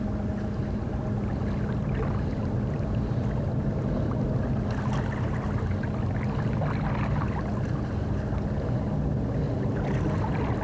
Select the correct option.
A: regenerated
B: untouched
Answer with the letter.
B